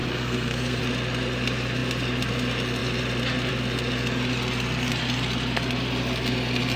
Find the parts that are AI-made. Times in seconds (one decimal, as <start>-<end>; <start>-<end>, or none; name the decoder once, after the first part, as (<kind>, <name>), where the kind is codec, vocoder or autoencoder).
0.0-0.8 (codec, SNAC)